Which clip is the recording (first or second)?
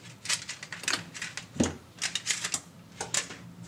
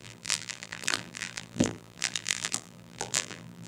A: first